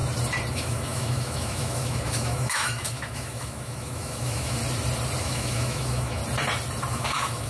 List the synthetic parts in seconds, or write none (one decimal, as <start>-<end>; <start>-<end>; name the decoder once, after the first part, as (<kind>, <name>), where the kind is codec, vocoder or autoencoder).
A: 0.5-4.6 (autoencoder, DAC-VAE); 5.2-6.2; 6.9-7.5